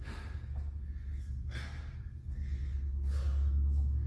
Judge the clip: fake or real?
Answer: fake